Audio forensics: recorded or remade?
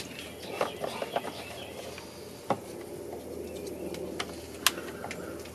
recorded